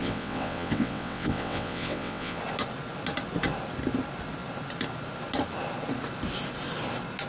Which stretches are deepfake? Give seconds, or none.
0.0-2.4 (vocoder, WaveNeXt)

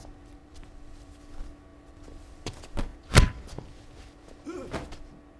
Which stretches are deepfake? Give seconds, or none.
0.4-1.2 (vocoder, BigVGAN v2); 1.7-2.5

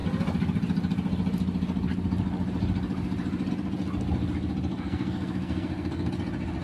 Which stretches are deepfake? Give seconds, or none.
4.7-6.1 (codec, SNAC)